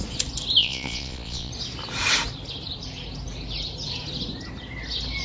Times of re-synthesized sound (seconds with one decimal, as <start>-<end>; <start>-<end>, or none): 0.6-1.5